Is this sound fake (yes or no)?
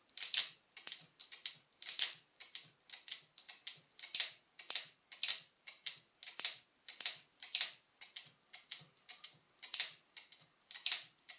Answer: no